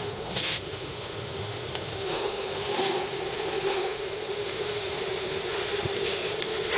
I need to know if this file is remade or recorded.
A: remade